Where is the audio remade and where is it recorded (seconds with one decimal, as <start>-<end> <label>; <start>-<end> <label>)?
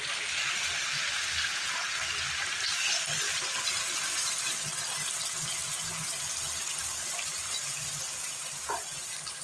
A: 0.0-9.4 recorded